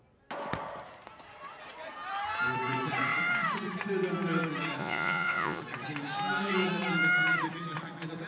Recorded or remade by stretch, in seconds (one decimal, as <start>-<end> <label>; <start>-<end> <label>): 0.0-4.8 recorded; 4.8-5.6 remade; 5.6-8.3 recorded